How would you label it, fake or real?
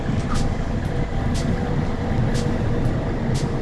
real